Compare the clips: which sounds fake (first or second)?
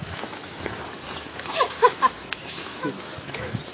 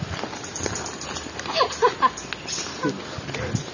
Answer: first